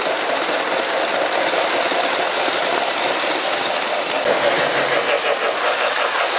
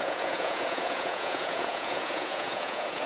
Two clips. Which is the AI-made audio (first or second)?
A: second